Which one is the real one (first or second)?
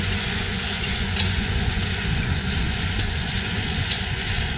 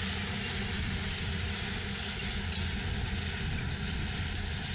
second